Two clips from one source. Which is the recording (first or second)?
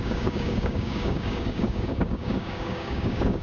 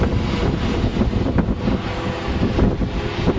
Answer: second